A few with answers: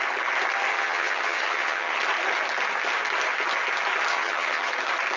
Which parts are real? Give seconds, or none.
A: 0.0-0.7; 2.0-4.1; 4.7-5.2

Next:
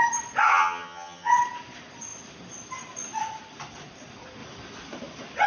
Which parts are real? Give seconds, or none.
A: 0.0-0.5; 1.3-5.5